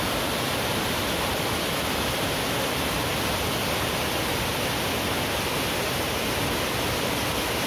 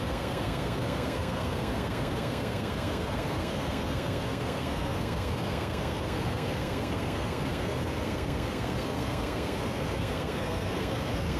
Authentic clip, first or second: first